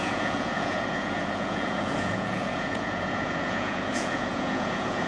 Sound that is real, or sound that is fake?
fake